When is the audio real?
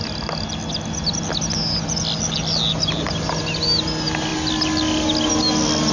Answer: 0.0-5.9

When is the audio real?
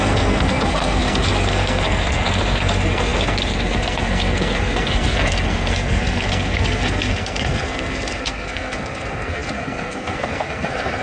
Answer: none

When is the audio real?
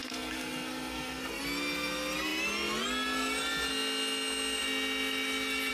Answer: 1.4-5.7